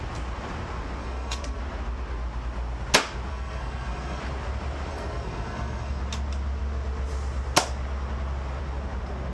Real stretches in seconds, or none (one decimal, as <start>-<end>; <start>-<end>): 0.0-1.0; 1.6-3.3; 4.2-4.9; 6.0-9.3